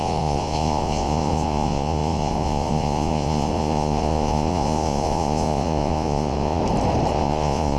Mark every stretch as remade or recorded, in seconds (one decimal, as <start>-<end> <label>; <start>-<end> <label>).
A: 0.0-6.6 remade; 6.6-7.1 recorded; 7.1-7.8 remade